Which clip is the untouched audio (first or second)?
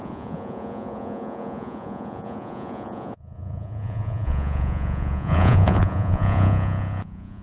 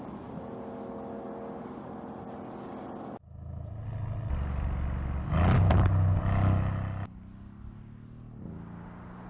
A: second